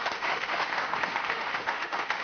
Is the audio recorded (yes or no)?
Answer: no